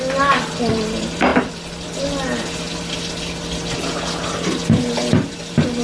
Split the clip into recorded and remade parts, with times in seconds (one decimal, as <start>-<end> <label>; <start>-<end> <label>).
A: 0.0-1.3 remade; 1.3-4.8 recorded; 4.8-5.8 remade